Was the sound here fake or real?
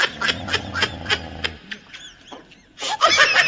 real